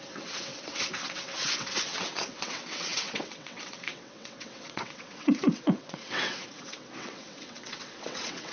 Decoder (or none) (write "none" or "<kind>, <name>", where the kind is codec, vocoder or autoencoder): vocoder, WaveNeXt